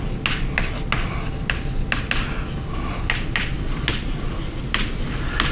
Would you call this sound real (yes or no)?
yes